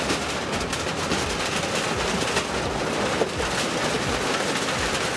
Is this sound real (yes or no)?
yes